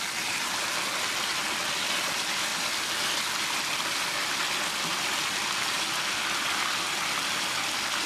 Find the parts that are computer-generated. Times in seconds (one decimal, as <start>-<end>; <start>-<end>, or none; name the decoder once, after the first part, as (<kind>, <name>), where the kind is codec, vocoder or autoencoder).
none